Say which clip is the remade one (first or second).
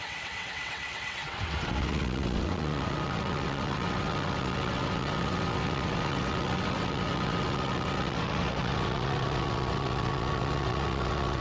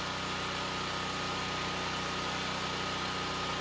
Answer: first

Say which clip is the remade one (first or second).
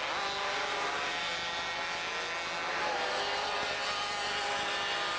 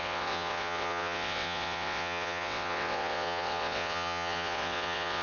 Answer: second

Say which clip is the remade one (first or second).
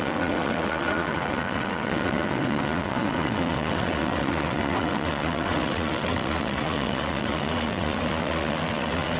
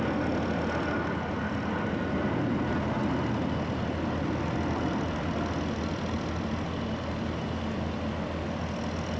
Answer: first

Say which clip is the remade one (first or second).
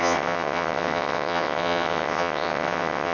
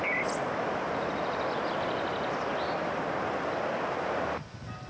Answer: first